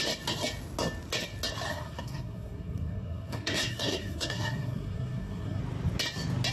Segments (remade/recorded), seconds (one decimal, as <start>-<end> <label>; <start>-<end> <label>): 0.0-1.7 recorded; 1.7-5.6 remade; 5.6-6.5 recorded